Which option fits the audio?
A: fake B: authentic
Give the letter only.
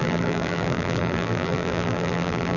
A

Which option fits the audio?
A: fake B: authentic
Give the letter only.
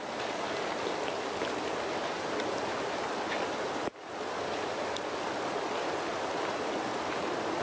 A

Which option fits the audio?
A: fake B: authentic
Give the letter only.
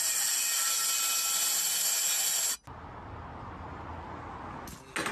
B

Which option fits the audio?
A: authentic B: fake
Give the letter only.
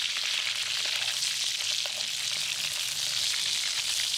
A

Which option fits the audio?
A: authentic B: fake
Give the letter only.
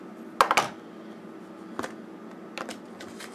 A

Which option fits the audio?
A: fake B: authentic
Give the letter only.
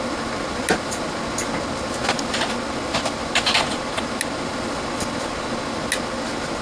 B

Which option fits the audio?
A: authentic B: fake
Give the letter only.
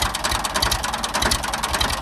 A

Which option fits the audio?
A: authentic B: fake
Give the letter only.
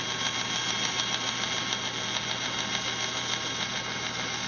A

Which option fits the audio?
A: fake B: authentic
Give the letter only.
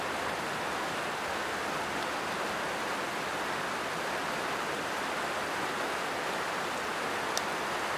B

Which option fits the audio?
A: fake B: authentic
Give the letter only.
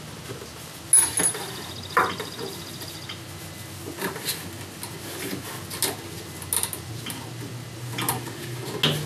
B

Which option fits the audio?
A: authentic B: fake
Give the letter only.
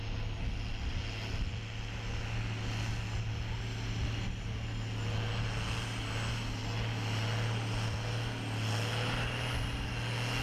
A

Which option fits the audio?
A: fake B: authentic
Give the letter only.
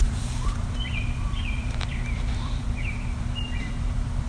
A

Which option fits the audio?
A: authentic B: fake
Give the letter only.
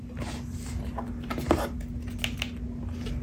A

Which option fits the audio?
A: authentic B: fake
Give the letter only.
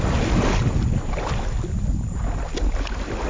A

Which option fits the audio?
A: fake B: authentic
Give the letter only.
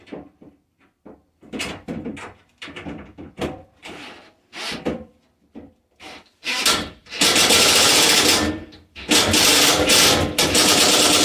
A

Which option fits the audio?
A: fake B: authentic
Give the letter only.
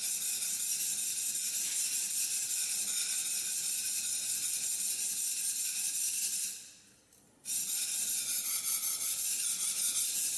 A